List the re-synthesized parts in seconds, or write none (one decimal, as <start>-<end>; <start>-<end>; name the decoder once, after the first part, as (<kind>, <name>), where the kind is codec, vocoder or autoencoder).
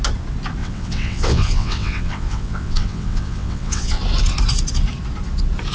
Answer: 0.6-4.0 (vocoder, WaveNeXt)